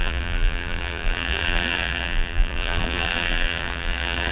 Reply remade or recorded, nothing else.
remade